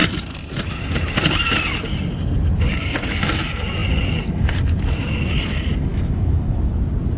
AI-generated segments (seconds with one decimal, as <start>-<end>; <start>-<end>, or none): 5.9-6.7